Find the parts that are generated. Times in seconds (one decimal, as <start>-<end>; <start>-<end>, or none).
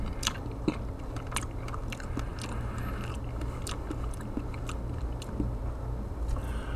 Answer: none